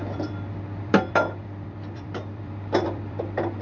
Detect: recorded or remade remade